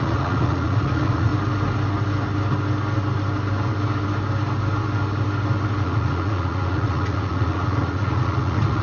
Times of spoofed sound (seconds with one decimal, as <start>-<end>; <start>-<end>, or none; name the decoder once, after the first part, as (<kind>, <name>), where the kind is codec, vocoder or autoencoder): 0.0-1.3 (vocoder, Vocos); 5.8-8.8